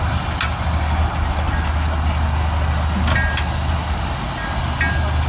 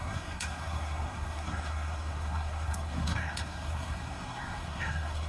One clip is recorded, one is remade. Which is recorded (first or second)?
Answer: first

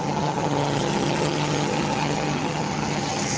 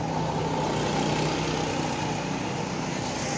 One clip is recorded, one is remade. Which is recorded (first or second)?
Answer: second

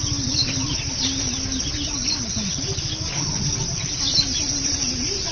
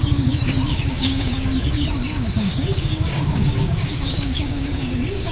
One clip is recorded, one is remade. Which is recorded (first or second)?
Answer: first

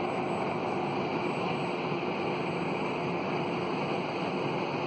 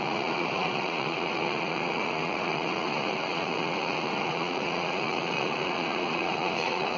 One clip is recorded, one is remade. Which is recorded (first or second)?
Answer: first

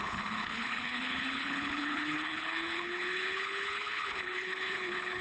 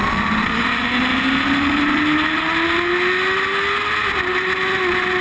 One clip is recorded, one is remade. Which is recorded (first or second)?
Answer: second